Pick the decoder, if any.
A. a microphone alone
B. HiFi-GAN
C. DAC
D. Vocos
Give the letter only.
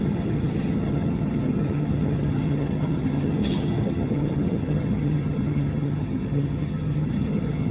B